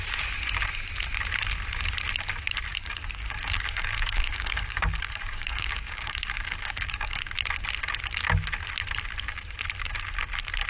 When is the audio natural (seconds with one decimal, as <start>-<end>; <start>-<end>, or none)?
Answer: 0.0-2.7; 7.3-10.7